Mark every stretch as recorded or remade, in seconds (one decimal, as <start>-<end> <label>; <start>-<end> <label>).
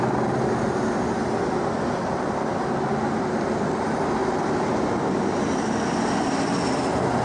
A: 0.0-7.2 recorded